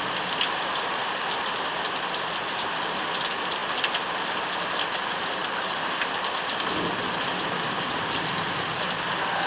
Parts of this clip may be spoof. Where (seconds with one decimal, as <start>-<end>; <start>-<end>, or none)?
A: none